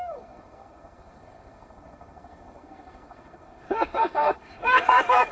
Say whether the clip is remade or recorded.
remade